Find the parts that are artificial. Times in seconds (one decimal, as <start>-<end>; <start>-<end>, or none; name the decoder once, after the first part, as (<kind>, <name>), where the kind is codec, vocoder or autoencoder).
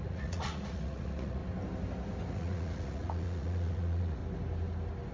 0.0-1.4 (vocoder, Vocos); 2.3-4.2